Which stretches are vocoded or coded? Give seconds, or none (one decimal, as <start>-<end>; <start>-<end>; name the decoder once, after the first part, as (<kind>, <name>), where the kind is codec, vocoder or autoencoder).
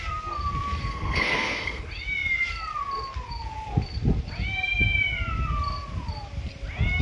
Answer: 0.9-1.8 (codec, SNAC)